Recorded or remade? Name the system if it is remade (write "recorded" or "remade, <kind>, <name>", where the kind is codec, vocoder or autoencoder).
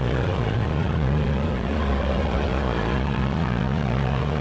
remade, vocoder, Vocos